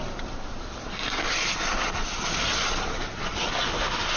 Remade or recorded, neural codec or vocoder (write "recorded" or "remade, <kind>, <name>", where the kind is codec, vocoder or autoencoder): recorded